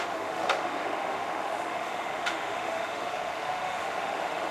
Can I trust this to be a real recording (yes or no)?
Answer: no